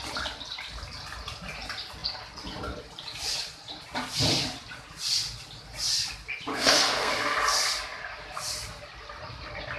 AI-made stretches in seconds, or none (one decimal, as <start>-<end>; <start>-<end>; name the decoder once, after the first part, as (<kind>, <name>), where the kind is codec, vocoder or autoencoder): 6.5-7.1 (codec, SNAC)